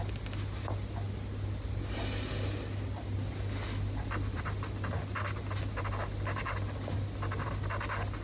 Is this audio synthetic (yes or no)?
no